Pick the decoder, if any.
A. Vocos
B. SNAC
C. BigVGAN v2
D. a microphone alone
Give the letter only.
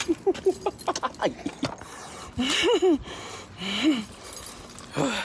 D